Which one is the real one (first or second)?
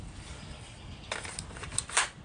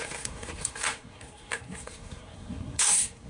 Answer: first